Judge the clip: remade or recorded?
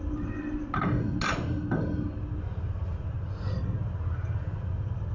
recorded